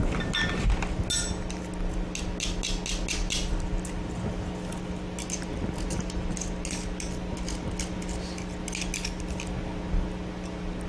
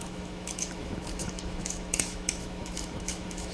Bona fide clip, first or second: first